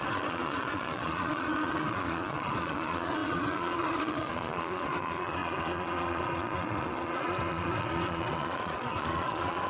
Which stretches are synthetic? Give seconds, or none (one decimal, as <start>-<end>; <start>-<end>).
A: 0.0-9.7